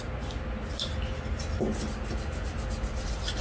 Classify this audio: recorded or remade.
recorded